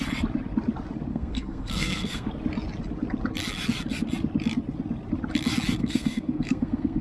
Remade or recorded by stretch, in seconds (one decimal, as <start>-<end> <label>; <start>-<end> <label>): 0.0-1.1 recorded; 1.1-2.3 remade; 2.3-5.8 recorded; 5.8-7.0 remade